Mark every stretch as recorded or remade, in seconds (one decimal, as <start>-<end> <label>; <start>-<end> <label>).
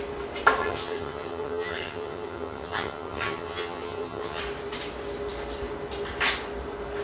0.0-0.6 recorded; 0.6-4.4 remade; 4.4-7.0 recorded